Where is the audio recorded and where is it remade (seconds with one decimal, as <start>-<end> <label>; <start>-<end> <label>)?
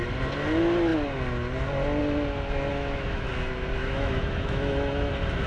0.0-2.7 recorded; 2.7-3.3 remade; 3.3-3.8 recorded; 3.8-5.1 remade; 5.1-5.5 recorded